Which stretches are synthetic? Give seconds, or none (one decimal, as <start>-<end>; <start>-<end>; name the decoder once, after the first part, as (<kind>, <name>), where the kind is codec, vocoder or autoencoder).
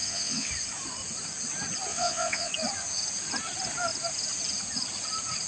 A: 0.0-0.5 (vocoder, WaveNeXt); 1.9-2.5